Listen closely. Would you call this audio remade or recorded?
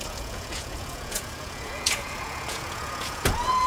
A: remade